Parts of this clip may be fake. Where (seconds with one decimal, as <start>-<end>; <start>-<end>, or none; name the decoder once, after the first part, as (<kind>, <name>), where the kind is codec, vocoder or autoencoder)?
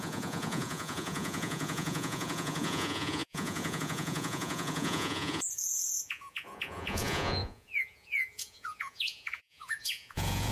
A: 0.0-10.5 (vocoder, Vocos)